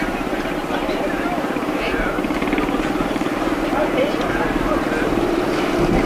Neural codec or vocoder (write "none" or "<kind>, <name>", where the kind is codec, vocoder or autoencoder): vocoder, BigVGAN v2